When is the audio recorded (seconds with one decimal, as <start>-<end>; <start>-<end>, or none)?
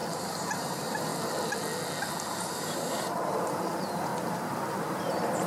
1.1-2.3; 4.1-4.9